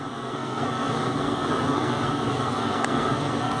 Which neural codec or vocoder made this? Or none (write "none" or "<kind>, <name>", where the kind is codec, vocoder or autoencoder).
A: codec, SNAC